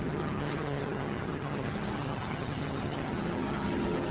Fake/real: fake